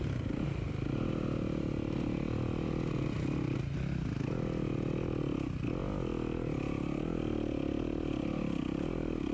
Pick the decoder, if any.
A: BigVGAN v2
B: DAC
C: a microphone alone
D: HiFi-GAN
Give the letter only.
C